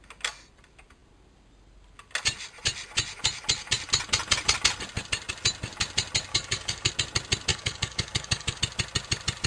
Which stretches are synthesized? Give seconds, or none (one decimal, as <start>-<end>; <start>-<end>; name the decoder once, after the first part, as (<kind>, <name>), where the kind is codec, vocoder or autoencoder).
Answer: 6.3-6.9 (codec, DAC); 7.5-8.6